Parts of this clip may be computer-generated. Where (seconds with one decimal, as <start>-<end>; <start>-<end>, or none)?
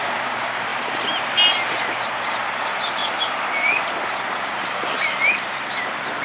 0.0-6.2